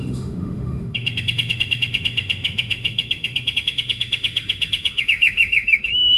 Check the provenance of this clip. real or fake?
fake